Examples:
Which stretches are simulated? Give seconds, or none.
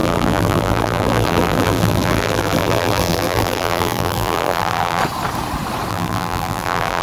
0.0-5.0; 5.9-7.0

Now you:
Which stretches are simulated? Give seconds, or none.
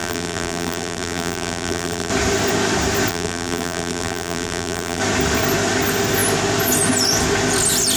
0.0-2.1; 3.1-5.0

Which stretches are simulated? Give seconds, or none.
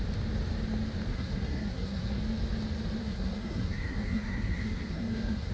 1.1-2.2; 3.0-5.5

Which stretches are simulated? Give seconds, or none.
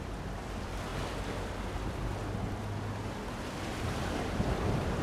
0.0-0.9; 3.9-5.0